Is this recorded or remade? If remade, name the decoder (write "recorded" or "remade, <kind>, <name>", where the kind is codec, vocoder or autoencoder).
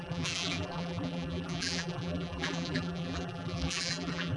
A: remade, vocoder, BigVGAN v2